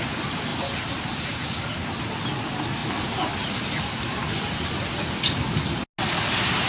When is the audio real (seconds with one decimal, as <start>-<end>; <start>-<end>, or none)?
0.0-0.5; 2.0-2.8; 5.6-6.7